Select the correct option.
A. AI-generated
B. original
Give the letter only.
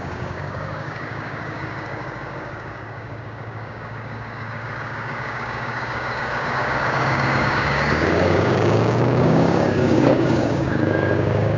A